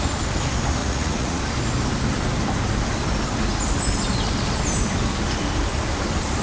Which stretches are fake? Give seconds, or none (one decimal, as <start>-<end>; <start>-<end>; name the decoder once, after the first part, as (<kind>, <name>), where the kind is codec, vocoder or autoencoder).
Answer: 0.8-1.4 (vocoder, Vocos)